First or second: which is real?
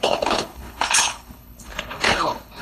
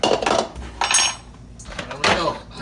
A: second